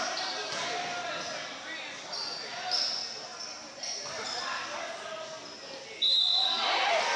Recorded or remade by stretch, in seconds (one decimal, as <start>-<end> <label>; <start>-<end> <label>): 0.0-7.2 recorded